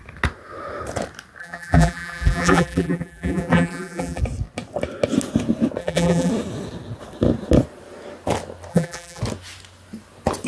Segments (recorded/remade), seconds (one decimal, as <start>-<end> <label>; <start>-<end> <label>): 0.0-1.4 recorded; 1.4-4.2 remade; 4.2-5.8 recorded; 5.8-6.3 remade; 6.3-8.7 recorded; 8.7-9.2 remade; 9.2-10.5 recorded